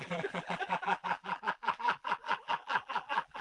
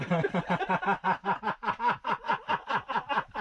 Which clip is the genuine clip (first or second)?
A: second